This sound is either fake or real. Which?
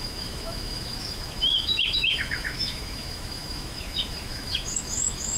fake